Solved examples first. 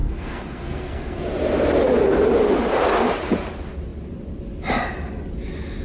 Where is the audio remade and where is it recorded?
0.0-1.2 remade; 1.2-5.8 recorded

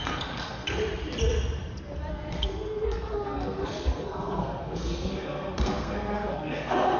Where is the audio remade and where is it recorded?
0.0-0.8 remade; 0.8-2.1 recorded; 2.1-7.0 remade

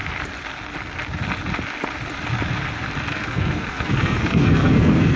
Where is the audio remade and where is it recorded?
0.0-3.1 recorded; 3.1-5.2 remade

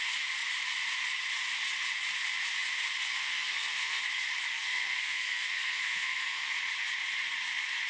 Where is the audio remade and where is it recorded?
0.0-3.2 recorded; 3.2-4.0 remade; 4.0-4.5 recorded; 4.5-6.6 remade; 6.6-7.9 recorded

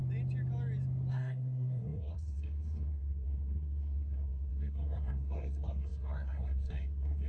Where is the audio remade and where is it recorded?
0.0-1.1 recorded; 1.1-7.3 remade

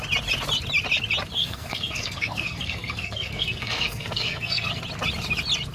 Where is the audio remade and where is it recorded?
0.0-1.4 recorded; 1.4-4.8 remade; 4.8-5.7 recorded